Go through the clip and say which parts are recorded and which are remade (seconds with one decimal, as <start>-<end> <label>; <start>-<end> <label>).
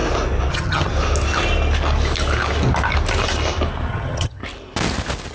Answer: 0.0-0.5 recorded; 0.5-0.9 remade; 0.9-3.9 recorded; 3.9-4.4 remade; 4.4-5.3 recorded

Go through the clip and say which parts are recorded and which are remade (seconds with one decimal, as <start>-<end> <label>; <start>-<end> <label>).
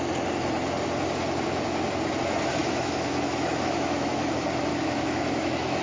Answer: 0.0-2.6 recorded; 2.6-4.3 remade; 4.3-4.7 recorded; 4.7-5.8 remade